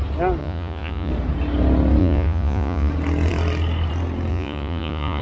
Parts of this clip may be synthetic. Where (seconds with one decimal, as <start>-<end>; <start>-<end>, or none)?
0.4-1.1; 2.0-2.9; 4.3-5.2